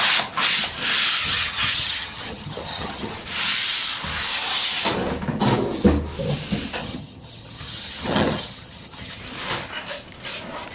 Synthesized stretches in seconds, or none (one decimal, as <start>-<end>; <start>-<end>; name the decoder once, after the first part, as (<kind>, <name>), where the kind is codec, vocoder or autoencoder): 1.2-3.1 (vocoder, HiFi-GAN); 6.8-9.2